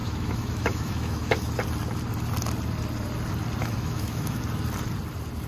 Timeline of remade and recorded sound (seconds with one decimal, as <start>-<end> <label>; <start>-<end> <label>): 0.0-1.5 remade; 1.5-3.6 recorded; 3.6-4.4 remade; 4.4-5.5 recorded